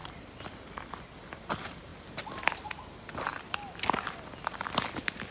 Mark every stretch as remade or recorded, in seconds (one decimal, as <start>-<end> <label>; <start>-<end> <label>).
0.0-5.3 recorded